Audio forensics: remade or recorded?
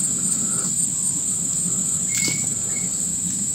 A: remade